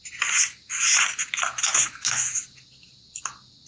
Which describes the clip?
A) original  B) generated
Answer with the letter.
A